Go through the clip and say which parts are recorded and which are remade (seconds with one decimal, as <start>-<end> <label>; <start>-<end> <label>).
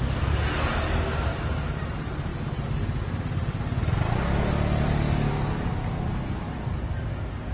0.0-7.5 recorded